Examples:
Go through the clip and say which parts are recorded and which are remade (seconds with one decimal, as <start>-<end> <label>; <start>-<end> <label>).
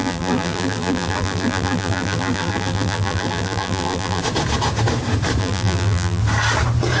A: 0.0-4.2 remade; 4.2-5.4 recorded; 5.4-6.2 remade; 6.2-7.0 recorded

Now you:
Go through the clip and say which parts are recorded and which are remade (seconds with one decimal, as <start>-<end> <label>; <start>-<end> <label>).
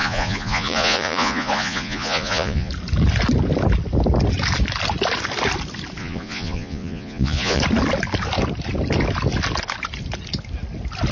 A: 0.0-2.7 remade; 2.7-6.0 recorded; 6.0-7.6 remade; 7.6-11.1 recorded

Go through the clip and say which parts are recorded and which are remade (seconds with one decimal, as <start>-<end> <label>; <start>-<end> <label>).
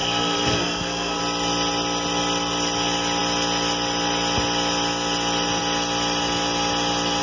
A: 0.0-1.2 remade; 1.2-7.2 recorded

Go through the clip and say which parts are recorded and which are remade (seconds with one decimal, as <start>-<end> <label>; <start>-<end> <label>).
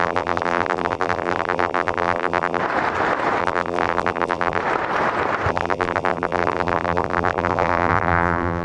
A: 0.0-2.6 remade; 2.6-3.4 recorded; 3.4-4.6 remade; 4.6-5.5 recorded; 5.5-8.6 remade